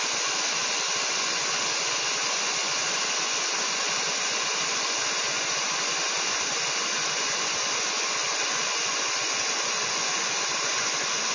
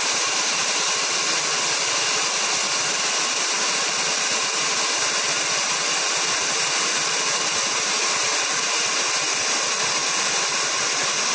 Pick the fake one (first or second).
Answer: first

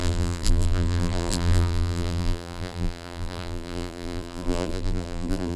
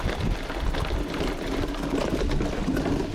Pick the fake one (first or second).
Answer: first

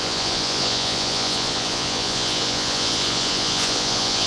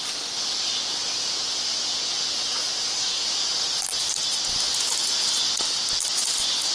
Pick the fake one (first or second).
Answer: first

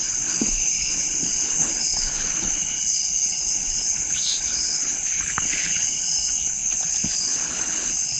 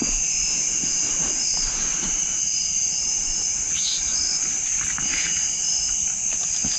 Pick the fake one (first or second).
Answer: first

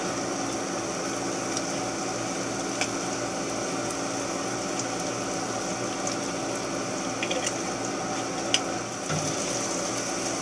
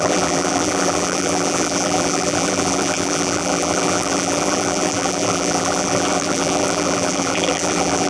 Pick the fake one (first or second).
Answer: second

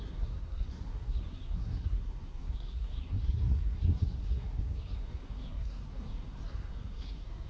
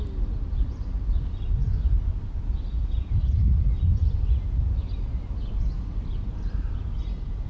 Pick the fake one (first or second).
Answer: first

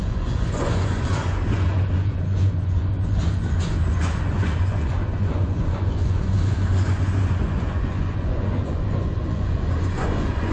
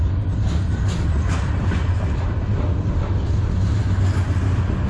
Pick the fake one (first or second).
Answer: first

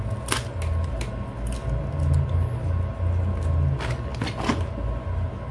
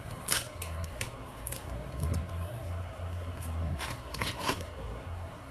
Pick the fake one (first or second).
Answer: second